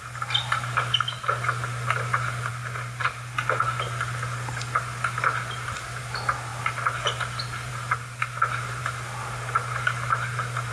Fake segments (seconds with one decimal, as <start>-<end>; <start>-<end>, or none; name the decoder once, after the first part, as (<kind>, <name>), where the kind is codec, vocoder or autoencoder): none